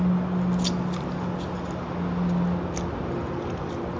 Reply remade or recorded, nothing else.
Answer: recorded